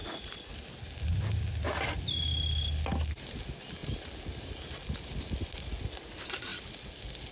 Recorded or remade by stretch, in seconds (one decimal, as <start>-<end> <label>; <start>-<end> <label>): 0.0-0.5 remade; 0.5-7.3 recorded